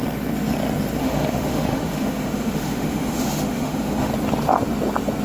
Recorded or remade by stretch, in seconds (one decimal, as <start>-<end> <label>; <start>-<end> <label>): 0.0-1.0 recorded; 1.0-4.1 remade; 4.1-5.2 recorded